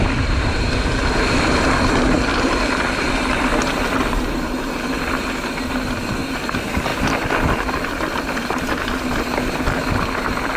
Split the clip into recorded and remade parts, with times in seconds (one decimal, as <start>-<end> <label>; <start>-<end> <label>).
0.0-2.3 recorded; 2.3-3.1 remade; 3.1-6.9 recorded; 6.9-10.6 remade